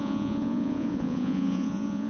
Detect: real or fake fake